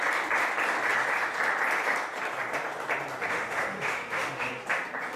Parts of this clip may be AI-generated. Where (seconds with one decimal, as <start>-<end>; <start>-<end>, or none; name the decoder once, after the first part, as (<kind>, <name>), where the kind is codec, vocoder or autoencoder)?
3.2-4.5 (autoencoder, DAC-VAE)